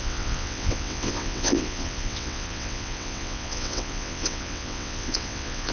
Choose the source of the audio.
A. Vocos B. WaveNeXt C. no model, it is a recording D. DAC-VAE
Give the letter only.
B